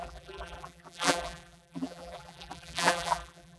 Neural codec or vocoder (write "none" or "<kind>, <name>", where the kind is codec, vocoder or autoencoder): vocoder, BigVGAN v2